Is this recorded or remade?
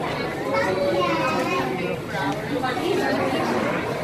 recorded